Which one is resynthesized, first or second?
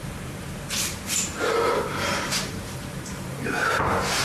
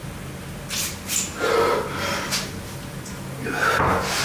first